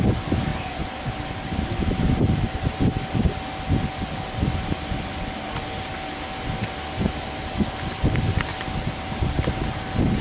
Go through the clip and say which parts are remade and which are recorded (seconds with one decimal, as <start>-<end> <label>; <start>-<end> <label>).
0.0-10.2 recorded